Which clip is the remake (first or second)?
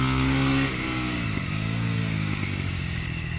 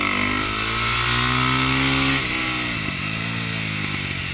first